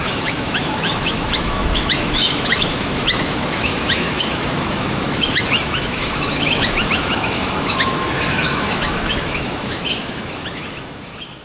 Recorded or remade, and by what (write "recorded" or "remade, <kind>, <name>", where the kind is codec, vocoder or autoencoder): remade, autoencoder, DAC-VAE